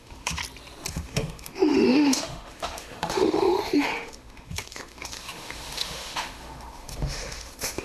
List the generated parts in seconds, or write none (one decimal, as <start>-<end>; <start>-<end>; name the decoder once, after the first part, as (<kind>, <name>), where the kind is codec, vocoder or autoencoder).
0.0-0.4 (autoencoder, DAC-VAE); 0.9-7.8